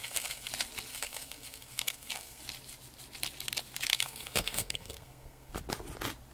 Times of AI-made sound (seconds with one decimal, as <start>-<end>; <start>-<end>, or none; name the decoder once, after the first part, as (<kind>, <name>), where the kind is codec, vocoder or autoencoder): 0.0-0.5 (codec, SNAC); 0.9-2.4; 3.9-5.5